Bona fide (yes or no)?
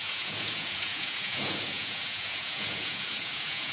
no